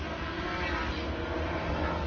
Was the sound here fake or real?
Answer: real